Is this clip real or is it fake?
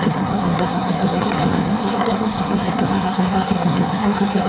fake